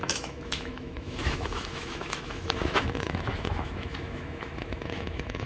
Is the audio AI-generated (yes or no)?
yes